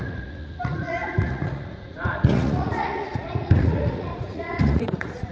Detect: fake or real fake